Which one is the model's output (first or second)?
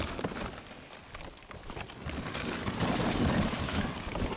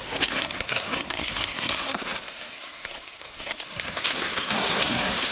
second